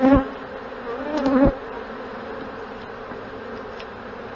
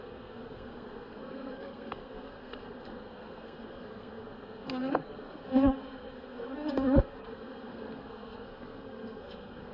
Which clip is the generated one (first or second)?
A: second